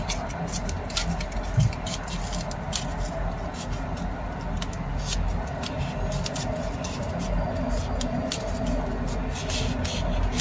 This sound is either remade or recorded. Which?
recorded